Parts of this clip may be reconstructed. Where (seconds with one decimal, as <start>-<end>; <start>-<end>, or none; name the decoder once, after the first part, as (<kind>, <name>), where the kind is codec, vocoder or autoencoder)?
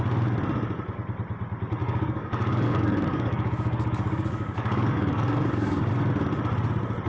1.8-5.9 (codec, DAC)